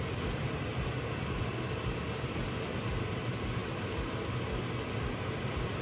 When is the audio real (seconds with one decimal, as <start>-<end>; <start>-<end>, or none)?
0.0-5.8